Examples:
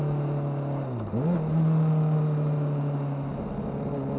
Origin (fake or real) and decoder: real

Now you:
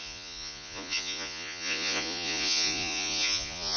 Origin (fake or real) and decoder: fake, vocoder, Vocos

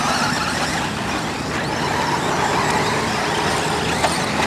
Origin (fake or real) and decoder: real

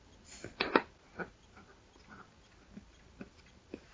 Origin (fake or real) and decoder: real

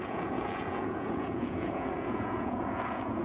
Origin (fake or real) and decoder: fake, vocoder, Vocos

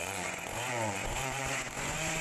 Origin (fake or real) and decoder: fake, vocoder, Vocos